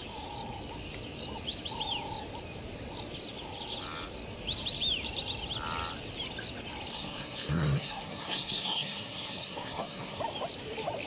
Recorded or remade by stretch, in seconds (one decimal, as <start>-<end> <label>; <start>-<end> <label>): 0.0-6.9 recorded; 6.9-10.2 remade; 10.2-11.1 recorded